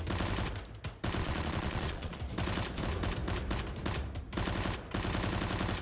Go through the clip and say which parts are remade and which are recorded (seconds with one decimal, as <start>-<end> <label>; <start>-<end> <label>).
0.0-1.2 recorded; 1.2-2.2 remade; 2.2-5.8 recorded